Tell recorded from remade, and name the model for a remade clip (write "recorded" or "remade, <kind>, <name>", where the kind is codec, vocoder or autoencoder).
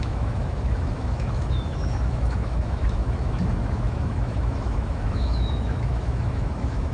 remade, autoencoder, DAC-VAE